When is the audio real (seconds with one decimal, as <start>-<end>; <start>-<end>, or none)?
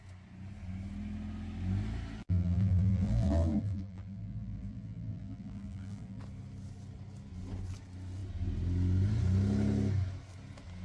0.0-2.2; 6.2-10.8